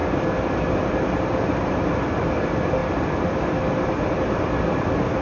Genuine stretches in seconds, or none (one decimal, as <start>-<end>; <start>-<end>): 0.0-5.2